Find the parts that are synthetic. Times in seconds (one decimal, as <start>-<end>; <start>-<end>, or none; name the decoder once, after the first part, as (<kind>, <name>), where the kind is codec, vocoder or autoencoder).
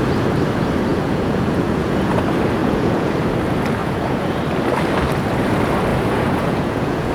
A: 0.9-2.1 (vocoder, Vocos); 2.6-3.1; 3.8-4.4; 5.9-7.1